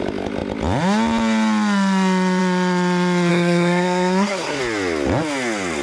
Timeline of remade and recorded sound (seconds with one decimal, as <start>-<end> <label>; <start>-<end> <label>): 0.0-3.3 recorded; 3.3-4.6 remade; 4.6-5.8 recorded